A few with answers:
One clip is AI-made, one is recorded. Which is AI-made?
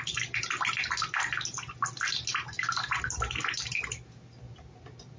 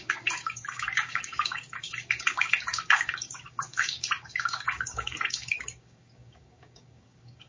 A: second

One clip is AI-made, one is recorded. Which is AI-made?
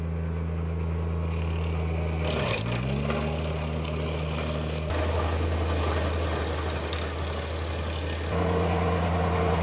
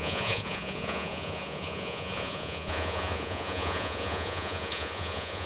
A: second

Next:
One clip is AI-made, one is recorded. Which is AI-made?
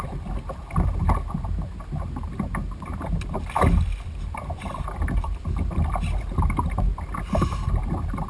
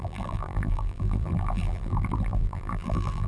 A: second